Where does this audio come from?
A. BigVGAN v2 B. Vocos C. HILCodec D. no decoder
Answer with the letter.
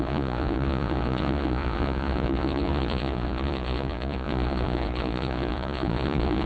B